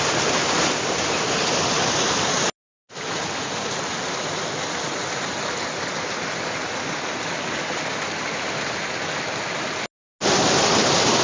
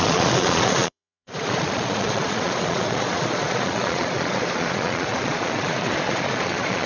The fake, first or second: second